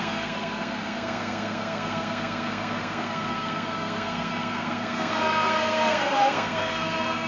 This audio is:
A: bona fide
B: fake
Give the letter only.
B